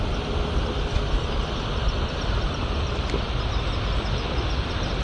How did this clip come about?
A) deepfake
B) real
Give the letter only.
B